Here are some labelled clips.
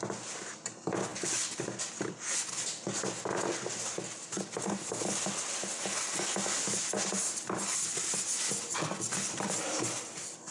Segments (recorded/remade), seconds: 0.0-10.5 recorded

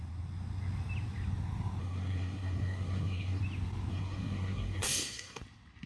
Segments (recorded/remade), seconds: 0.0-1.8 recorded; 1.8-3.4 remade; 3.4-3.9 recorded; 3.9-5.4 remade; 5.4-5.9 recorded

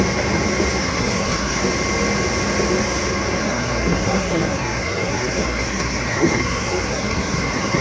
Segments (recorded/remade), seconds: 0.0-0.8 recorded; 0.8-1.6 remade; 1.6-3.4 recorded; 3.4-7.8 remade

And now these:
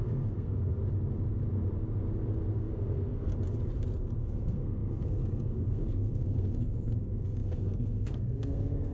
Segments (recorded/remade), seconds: 0.0-0.8 remade; 0.8-2.6 recorded; 2.6-3.3 remade; 3.3-4.2 recorded; 4.2-8.9 remade